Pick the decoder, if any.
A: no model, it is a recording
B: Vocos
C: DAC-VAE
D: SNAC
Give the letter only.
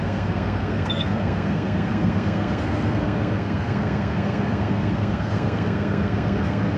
D